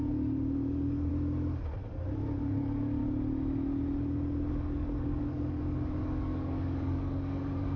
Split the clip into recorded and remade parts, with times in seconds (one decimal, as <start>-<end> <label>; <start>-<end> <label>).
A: 0.0-1.1 remade; 1.1-2.4 recorded; 2.4-3.0 remade; 3.0-4.5 recorded; 4.5-7.8 remade